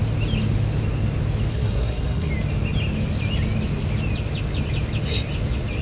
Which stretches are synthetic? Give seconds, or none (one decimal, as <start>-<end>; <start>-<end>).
1.5-2.3